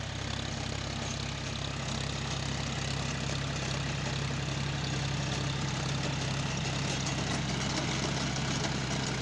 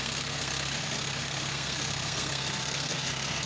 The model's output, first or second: second